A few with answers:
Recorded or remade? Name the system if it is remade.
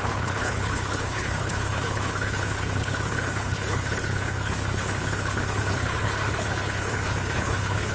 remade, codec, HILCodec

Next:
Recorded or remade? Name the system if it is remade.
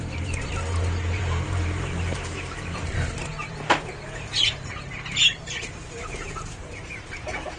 remade, vocoder, BigVGAN v2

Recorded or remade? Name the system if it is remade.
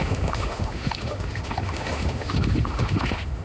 remade, autoencoder, DAC-VAE